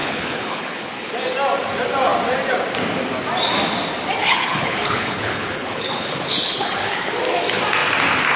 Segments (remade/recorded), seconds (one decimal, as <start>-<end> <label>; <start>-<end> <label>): 0.0-1.1 remade; 1.1-4.2 recorded; 4.2-7.1 remade; 7.1-8.4 recorded